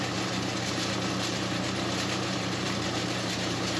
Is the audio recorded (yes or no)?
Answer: no